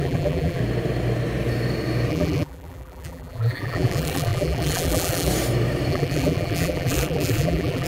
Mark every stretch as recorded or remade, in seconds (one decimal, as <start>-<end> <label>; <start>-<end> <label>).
0.0-0.6 remade; 0.6-2.1 recorded; 2.1-5.3 remade; 5.3-5.9 recorded; 5.9-7.9 remade